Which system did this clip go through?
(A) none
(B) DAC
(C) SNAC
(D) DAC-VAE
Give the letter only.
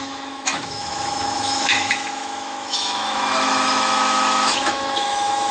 D